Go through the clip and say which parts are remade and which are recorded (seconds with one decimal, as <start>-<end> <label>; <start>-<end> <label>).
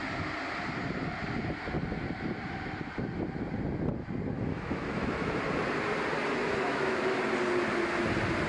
0.0-4.5 recorded; 4.5-5.4 remade; 5.4-6.4 recorded; 6.4-7.2 remade; 7.2-8.5 recorded